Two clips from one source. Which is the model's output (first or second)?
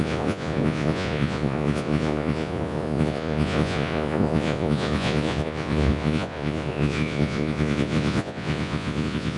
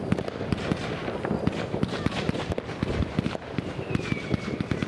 first